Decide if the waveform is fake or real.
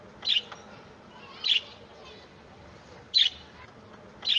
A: real